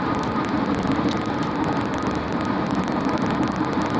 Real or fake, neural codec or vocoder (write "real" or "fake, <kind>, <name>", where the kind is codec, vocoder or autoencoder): real